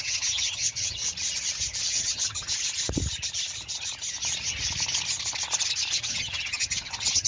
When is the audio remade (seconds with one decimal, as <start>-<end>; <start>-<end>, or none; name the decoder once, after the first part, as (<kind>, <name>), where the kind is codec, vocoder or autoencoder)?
0.0-1.0 (vocoder, HiFi-GAN); 1.8-2.5; 6.0-7.3